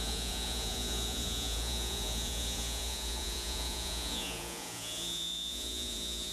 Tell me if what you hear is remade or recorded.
remade